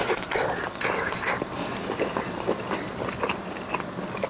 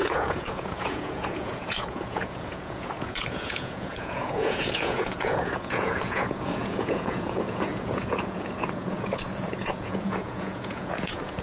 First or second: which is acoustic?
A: first